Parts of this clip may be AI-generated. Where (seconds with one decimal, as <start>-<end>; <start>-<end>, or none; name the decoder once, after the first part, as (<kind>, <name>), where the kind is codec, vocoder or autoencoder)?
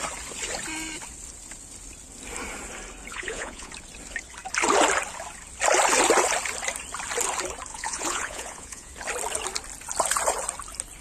3.1-3.7 (vocoder, Vocos); 7.7-8.9